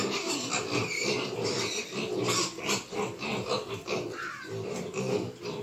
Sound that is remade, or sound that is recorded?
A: recorded